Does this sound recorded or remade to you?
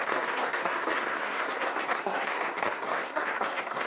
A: remade